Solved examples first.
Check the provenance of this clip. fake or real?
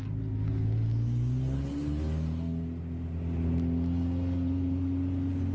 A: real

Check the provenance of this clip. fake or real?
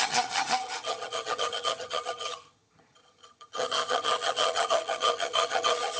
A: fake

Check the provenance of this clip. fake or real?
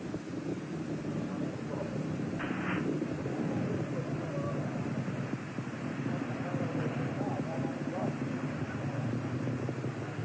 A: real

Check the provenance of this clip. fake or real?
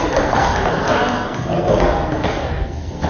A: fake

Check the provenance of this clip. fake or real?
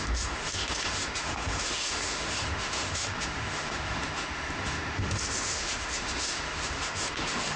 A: fake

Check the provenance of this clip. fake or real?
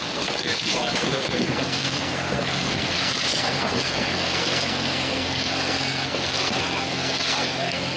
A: fake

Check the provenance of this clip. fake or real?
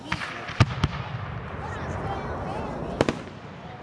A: real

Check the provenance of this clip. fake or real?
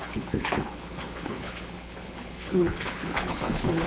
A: fake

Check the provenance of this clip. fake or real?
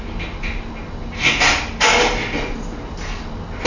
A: real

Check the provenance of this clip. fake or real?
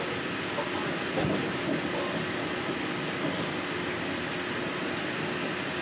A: real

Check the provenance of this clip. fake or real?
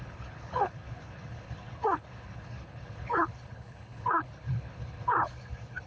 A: fake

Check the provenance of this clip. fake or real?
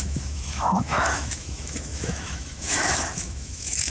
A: fake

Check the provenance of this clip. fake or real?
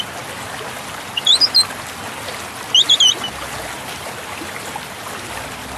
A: real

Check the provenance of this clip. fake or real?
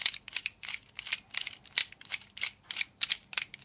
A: real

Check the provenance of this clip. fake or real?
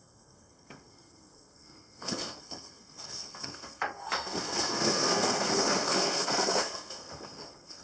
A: fake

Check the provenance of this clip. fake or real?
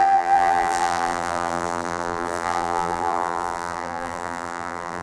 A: fake